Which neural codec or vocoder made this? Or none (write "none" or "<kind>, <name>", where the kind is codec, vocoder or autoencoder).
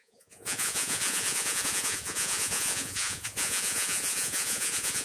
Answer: vocoder, Vocos